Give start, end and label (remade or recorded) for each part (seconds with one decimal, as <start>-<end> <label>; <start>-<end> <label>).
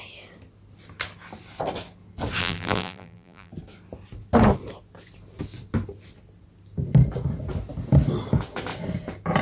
0.0-2.4 recorded; 2.4-3.5 remade; 3.5-9.4 recorded